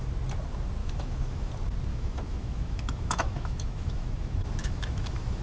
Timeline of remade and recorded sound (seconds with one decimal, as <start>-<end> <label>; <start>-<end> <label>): 0.0-0.8 recorded; 0.8-1.5 remade; 1.5-1.9 recorded; 1.9-5.4 remade